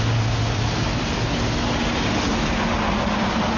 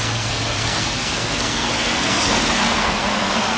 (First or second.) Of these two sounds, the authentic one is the first